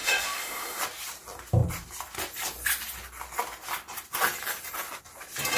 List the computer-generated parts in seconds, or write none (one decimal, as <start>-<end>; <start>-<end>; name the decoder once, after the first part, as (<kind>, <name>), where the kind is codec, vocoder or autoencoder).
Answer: 0.0-0.8 (autoencoder, DAC-VAE)

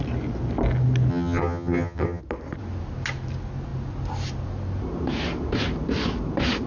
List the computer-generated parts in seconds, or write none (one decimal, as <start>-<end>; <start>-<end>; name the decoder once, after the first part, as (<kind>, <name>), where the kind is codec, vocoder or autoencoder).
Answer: 1.1-2.2 (vocoder, HiFi-GAN)

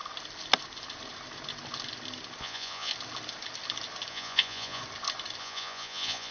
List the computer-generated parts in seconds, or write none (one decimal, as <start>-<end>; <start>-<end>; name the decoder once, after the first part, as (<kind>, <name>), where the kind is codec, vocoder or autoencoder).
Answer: 2.4-2.9 (vocoder, Vocos); 4.1-4.8; 5.4-6.3

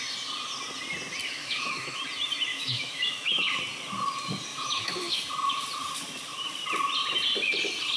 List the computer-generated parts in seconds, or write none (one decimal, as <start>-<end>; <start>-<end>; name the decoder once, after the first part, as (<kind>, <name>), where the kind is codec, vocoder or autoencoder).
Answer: 1.4-2.0 (autoencoder, DAC-VAE); 2.5-3.6; 4.5-5.2